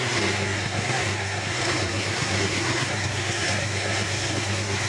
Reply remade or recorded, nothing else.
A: remade